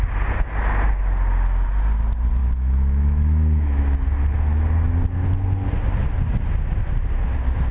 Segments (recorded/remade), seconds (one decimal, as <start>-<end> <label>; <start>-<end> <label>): 0.0-2.4 recorded; 2.4-3.8 remade; 3.8-7.7 recorded